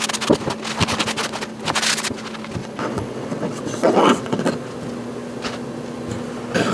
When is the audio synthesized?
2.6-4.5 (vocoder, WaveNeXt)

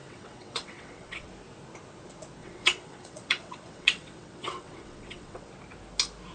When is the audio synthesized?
0.0-1.3 (vocoder, WaveNeXt); 2.4-5.5

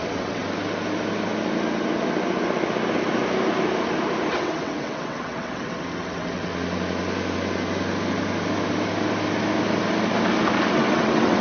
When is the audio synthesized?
0.0-0.4 (vocoder, WaveNeXt); 4.3-6.5; 10.7-11.4

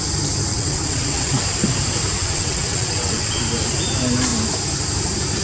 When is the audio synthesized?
0.5-1.4 (vocoder, WaveNeXt); 2.2-3.4

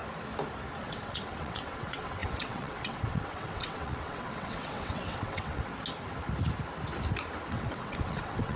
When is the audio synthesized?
0.8-5.7 (vocoder, WaveNeXt); 7.5-8.6

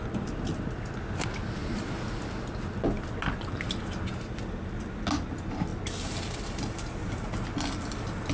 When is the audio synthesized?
none

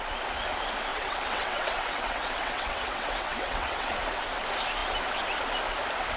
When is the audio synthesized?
0.9-3.9 (vocoder, WaveNeXt)

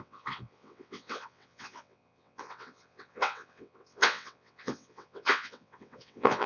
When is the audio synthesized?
0.0-6.5 (vocoder, WaveNeXt)